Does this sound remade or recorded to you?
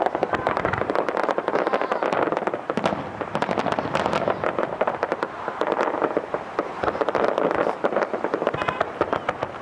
recorded